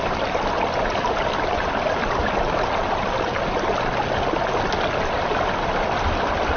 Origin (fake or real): real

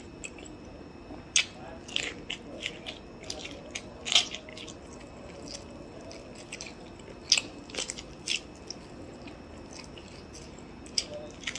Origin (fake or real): real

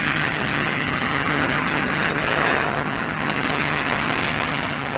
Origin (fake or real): fake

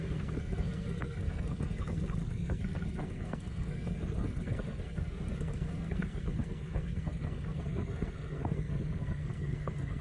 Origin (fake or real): fake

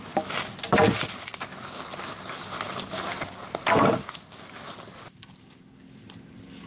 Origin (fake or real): real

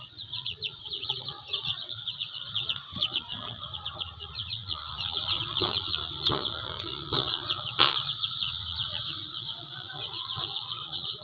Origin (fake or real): fake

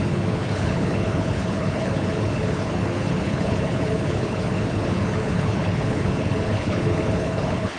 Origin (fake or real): fake